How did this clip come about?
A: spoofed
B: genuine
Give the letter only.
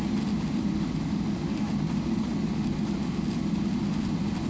B